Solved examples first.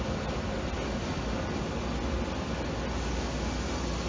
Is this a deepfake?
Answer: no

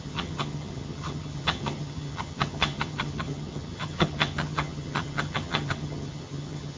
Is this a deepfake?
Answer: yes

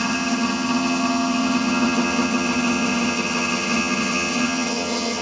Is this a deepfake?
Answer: yes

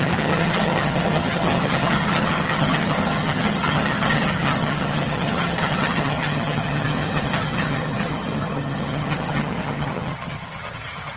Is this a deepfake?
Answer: yes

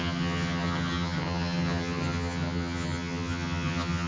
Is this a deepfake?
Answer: yes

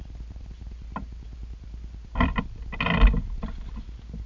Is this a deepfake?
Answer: no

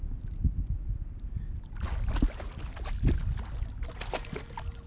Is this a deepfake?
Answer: no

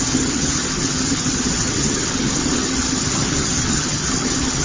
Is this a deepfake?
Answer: yes